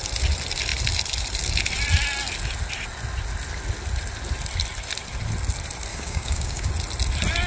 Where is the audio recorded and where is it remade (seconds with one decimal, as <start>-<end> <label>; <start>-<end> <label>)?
0.0-5.9 recorded; 5.9-6.7 remade; 6.7-7.5 recorded